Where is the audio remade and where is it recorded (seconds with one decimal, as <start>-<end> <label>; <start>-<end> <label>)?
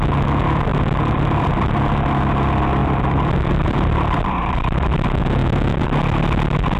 0.0-0.7 recorded; 0.7-1.5 remade; 1.5-2.8 recorded; 2.8-4.8 remade; 4.8-6.8 recorded